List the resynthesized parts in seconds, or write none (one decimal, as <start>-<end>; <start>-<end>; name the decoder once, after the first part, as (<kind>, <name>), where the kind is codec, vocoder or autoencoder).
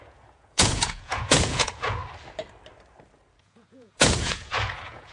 0.0-2.0 (vocoder, Vocos); 3.4-5.1